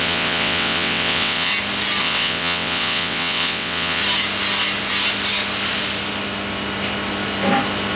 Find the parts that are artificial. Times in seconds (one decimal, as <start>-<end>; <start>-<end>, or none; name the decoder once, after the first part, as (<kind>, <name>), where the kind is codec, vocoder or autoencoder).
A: 0.0-1.5 (vocoder, WaveNeXt); 2.0-4.0